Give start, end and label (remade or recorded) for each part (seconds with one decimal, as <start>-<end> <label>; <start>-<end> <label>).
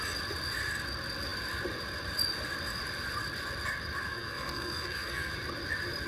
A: 0.0-4.1 recorded; 4.1-5.3 remade; 5.3-6.1 recorded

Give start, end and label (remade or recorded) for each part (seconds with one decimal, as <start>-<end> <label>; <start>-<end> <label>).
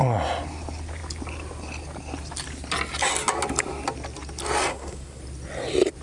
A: 0.0-4.7 recorded; 4.7-5.2 remade; 5.2-6.0 recorded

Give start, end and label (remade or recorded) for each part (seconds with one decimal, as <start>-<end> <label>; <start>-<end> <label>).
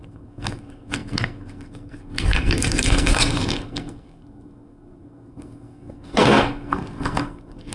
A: 0.0-7.7 remade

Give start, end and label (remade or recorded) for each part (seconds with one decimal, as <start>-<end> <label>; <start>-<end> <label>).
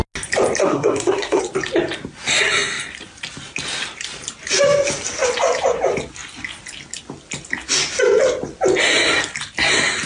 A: 0.0-0.6 recorded; 0.6-1.4 remade; 1.4-10.1 recorded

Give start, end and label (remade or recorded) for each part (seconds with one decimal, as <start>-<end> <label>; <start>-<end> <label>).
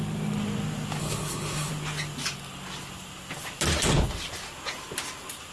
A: 0.0-1.0 recorded; 1.0-1.7 remade; 1.7-5.5 recorded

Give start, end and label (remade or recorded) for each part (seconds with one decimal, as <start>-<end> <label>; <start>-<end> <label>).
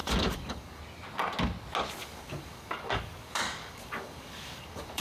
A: 0.0-0.8 remade; 0.8-2.0 recorded; 2.0-5.0 remade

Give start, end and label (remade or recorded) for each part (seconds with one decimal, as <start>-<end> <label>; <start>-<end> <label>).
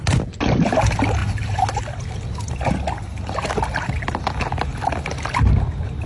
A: 0.0-6.1 recorded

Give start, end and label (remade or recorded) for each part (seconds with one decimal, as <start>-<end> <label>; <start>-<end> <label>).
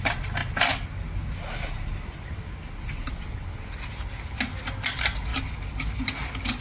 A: 0.0-6.6 recorded